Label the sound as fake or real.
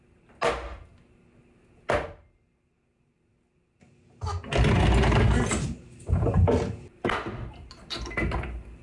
real